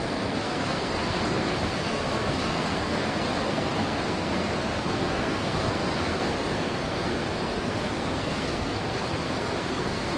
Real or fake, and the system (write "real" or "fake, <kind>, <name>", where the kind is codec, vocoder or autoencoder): fake, codec, SNAC